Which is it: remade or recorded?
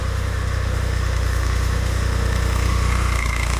remade